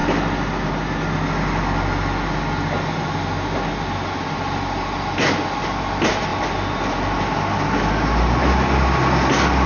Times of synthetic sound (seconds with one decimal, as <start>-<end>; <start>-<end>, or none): none